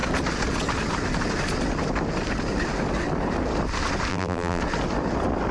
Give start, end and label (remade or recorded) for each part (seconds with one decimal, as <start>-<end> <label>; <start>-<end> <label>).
0.0-4.1 recorded; 4.1-4.6 remade; 4.6-5.5 recorded